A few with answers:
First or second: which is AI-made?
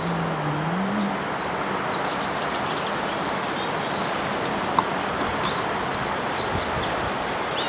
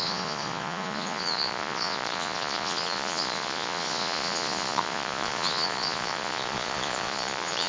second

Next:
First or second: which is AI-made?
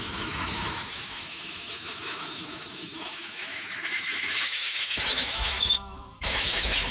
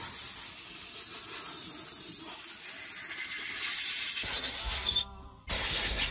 first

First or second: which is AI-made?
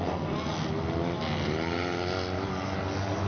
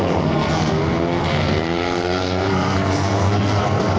second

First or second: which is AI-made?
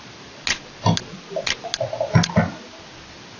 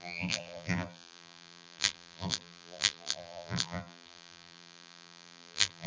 second